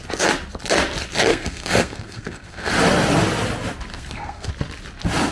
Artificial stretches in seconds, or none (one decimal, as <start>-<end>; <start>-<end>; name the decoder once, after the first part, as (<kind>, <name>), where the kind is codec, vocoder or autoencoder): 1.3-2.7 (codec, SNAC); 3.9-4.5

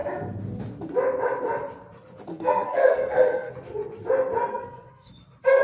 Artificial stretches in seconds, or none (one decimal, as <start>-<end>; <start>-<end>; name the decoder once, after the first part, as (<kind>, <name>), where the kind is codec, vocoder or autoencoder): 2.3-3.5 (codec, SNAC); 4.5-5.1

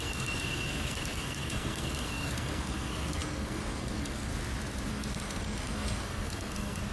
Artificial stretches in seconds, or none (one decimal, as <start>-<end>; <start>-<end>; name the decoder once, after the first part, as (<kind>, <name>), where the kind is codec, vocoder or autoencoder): 0.0-4.3 (codec, SNAC); 4.9-6.9

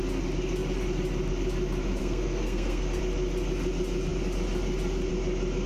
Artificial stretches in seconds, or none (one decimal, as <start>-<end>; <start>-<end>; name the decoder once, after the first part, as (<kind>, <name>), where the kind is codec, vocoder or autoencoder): 2.0-3.0 (codec, SNAC)

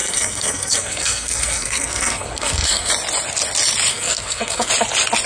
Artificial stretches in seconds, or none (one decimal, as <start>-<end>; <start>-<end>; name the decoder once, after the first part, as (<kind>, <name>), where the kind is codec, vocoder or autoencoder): 0.0-2.9 (codec, SNAC); 3.9-4.7

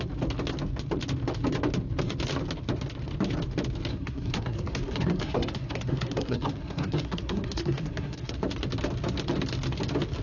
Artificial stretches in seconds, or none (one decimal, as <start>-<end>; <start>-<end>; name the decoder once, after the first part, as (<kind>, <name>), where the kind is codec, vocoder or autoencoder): 3.9-8.3 (codec, SNAC)